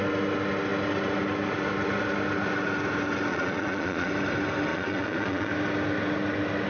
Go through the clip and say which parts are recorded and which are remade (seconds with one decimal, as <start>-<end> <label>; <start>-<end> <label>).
0.0-3.3 recorded; 3.3-4.1 remade; 4.1-4.7 recorded; 4.7-5.5 remade; 5.5-6.7 recorded